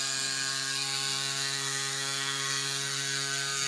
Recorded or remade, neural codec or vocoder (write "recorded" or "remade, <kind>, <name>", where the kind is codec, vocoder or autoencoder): remade, codec, SNAC